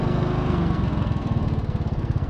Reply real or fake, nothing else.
fake